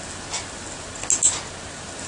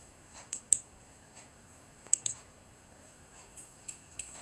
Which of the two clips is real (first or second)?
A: first